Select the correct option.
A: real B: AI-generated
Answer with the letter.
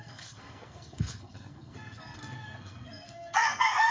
B